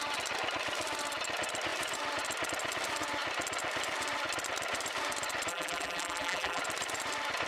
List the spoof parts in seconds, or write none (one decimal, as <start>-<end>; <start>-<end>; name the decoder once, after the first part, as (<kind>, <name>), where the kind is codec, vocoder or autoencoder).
5.5-6.6 (vocoder, BigVGAN v2)

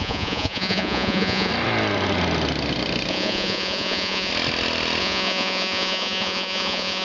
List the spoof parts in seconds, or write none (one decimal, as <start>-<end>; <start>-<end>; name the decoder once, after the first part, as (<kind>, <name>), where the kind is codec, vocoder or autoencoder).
0.0-1.5 (vocoder, Vocos); 3.1-4.3; 5.0-7.0

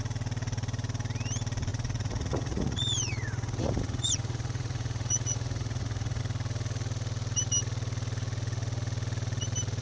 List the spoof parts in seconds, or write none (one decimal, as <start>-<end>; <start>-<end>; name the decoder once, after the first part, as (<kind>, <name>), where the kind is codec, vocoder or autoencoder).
1.7-6.2 (vocoder, Vocos)

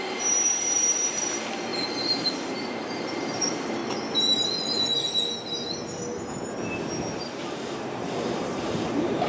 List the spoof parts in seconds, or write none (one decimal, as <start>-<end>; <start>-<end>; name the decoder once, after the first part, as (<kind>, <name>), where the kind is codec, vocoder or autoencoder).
0.0-3.8 (vocoder, BigVGAN v2); 7.4-9.3

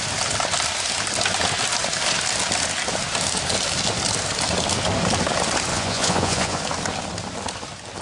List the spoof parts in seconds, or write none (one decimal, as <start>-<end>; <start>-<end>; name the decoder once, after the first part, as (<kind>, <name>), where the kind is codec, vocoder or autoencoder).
5.7-6.6 (vocoder, Vocos)